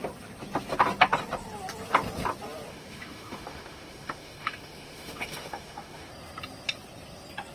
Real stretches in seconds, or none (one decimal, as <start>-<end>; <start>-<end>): 0.0-2.7; 6.1-7.5